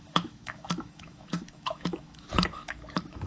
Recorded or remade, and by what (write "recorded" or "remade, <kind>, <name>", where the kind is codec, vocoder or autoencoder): remade, autoencoder, DAC-VAE